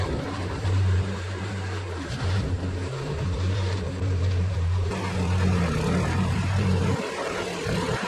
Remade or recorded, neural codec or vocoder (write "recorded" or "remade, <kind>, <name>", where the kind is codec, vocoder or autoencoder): remade, vocoder, BigVGAN v2